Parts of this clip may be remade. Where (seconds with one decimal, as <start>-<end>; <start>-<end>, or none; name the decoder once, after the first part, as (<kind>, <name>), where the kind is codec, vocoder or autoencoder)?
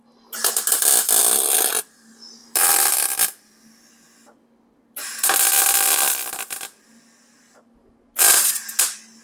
1.2-1.7 (vocoder, BigVGAN v2); 2.4-7.0